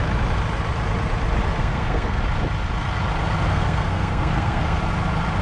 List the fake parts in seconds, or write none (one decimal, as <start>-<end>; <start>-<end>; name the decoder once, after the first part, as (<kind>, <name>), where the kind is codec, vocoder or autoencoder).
1.6-2.2 (codec, SNAC); 3.5-4.8